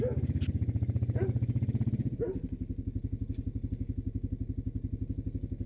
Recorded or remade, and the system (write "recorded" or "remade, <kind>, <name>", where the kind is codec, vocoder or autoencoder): recorded